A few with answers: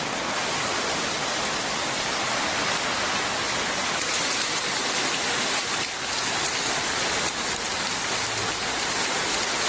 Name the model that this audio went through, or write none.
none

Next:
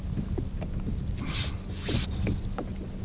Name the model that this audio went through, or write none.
none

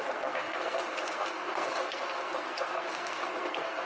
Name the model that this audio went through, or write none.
codec, SNAC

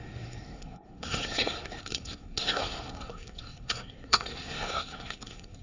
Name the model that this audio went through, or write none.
codec, SNAC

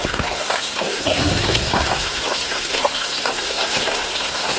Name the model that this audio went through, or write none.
codec, SNAC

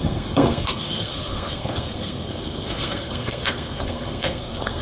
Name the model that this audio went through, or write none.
codec, SNAC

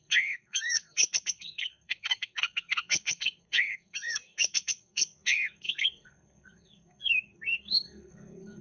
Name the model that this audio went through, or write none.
codec, SNAC